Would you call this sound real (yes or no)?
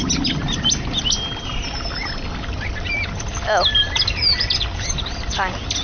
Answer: yes